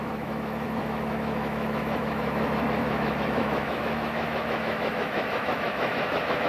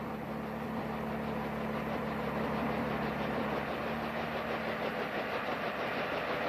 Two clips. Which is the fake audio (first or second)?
first